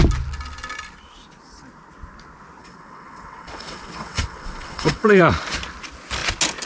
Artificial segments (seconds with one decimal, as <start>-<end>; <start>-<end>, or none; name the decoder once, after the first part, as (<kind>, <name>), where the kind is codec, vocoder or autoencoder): 2.6-5.2 (vocoder, WaveNeXt)